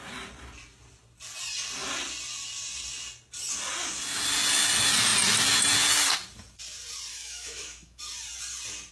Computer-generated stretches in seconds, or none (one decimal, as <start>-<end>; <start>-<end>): 7.1-8.0